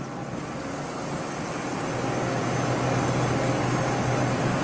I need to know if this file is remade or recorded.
recorded